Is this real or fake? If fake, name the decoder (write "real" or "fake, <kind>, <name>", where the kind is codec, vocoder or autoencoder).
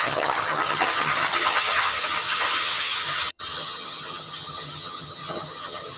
fake, vocoder, HiFi-GAN